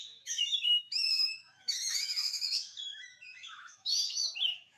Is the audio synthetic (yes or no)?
yes